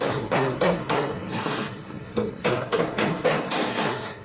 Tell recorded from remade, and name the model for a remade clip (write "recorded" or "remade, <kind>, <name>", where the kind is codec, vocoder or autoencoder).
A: remade, codec, SNAC